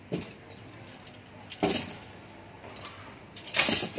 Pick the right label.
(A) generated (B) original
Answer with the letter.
B